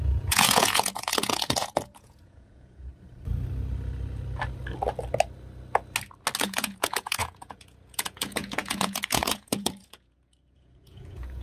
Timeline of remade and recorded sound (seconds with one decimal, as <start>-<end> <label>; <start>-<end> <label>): 0.0-2.9 remade; 2.9-6.4 recorded; 6.4-11.4 remade